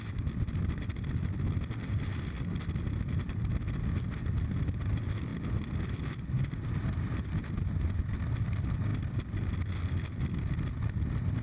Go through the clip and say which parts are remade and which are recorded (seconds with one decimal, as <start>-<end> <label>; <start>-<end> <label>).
0.0-11.4 recorded